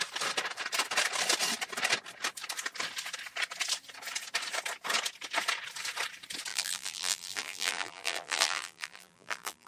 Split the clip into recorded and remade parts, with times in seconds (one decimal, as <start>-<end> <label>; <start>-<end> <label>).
0.0-6.5 recorded; 6.5-9.7 remade